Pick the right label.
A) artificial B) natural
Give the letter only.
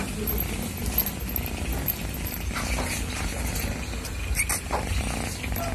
B